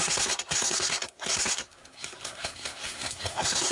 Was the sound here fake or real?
fake